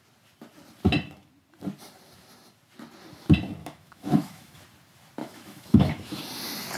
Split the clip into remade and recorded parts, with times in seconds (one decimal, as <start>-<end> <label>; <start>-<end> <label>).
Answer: 0.0-3.6 recorded; 3.6-4.6 remade; 4.6-5.2 recorded; 5.2-6.2 remade; 6.2-6.8 recorded